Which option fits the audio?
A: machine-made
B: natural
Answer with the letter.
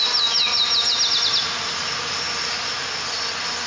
B